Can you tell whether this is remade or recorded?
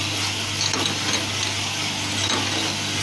recorded